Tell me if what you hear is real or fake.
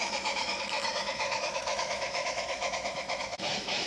fake